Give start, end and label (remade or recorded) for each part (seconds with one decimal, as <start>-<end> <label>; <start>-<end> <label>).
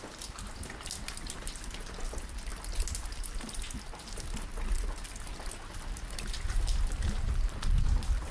0.0-8.3 recorded